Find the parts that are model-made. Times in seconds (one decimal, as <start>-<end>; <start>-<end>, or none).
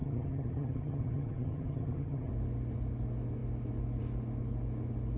0.0-2.3